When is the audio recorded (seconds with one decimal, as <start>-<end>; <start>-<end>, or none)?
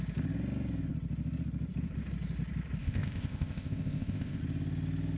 0.0-2.8; 4.4-5.2